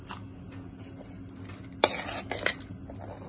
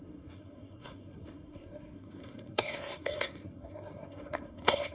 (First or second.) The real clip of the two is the first